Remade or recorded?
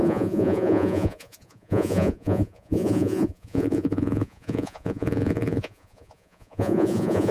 remade